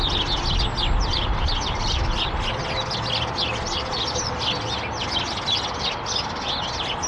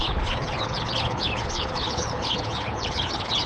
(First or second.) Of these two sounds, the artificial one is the second